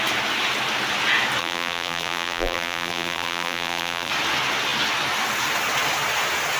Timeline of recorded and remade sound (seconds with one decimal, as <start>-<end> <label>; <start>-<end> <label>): 0.0-1.4 recorded; 1.4-4.1 remade; 4.1-6.6 recorded